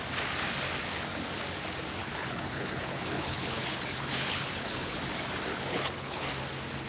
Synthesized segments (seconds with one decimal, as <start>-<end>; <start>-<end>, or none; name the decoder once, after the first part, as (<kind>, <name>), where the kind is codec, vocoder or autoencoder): 2.0-5.0 (codec, HILCodec); 5.5-6.3